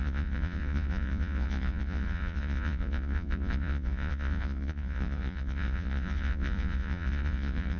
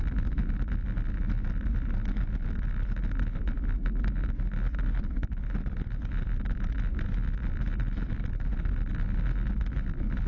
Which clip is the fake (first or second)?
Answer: first